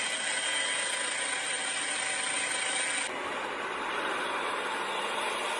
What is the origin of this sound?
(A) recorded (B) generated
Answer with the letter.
A